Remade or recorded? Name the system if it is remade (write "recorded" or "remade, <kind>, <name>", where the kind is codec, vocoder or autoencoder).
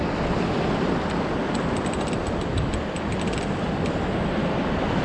recorded